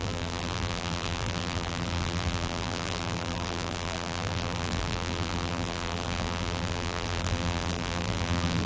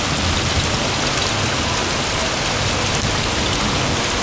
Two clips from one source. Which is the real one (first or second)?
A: second